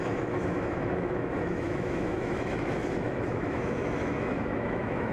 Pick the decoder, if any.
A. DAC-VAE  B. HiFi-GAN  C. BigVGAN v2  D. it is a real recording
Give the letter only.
A